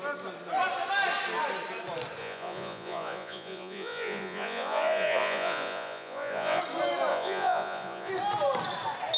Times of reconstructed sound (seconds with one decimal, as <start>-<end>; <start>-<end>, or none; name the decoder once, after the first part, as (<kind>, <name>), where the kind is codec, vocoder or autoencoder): 2.2-6.6 (vocoder, Vocos); 7.1-8.1